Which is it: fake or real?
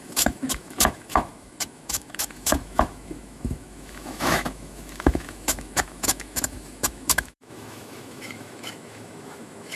fake